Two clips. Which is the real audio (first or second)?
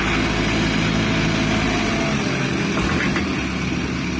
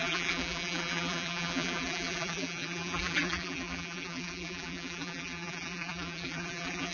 first